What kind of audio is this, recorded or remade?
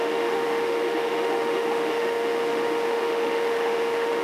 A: remade